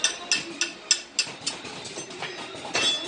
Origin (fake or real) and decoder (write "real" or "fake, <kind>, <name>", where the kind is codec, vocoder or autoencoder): real